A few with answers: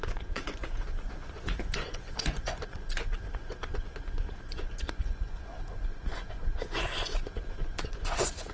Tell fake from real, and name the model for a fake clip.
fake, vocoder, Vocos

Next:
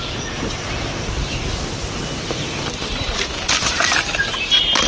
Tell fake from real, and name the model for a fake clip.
real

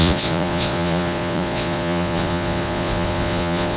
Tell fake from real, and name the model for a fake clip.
fake, vocoder, Vocos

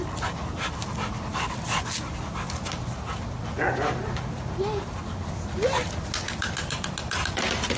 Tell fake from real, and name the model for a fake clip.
real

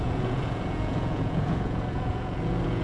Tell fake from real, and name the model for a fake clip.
fake, vocoder, Vocos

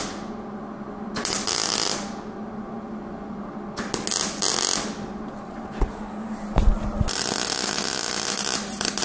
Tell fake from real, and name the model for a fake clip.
real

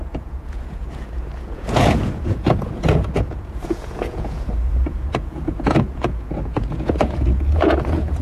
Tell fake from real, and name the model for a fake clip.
fake, vocoder, Vocos